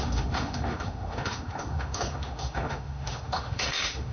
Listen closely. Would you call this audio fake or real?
fake